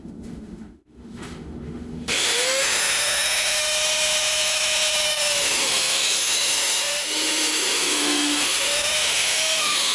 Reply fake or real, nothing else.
fake